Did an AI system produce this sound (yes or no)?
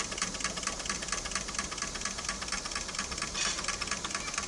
no